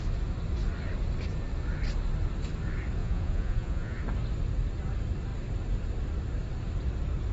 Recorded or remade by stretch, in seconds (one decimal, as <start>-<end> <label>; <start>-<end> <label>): 0.0-3.0 recorded; 3.0-4.0 remade; 4.0-7.3 recorded